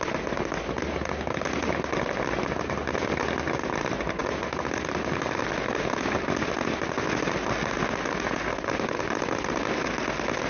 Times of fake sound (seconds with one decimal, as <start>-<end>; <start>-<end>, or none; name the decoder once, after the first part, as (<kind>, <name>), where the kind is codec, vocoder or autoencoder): none